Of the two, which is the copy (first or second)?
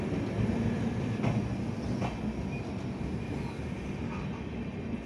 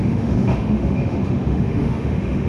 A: second